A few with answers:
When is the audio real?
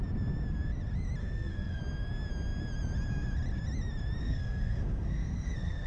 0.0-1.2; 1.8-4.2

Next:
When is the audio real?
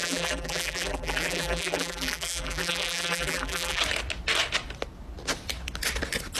3.8-6.4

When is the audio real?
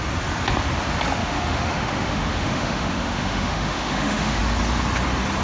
0.0-1.2; 4.4-5.4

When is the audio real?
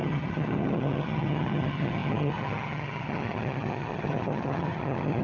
none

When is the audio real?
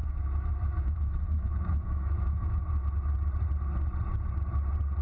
2.6-5.0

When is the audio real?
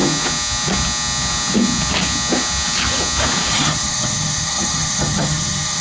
0.0-3.5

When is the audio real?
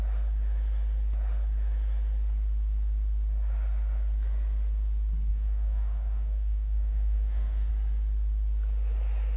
0.0-5.3; 7.7-9.4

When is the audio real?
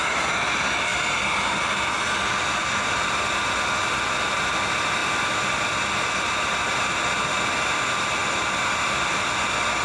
0.0-9.8